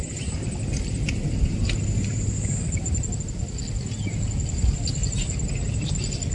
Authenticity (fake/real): real